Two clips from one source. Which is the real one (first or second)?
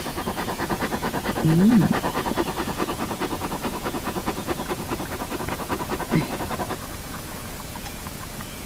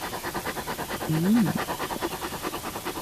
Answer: second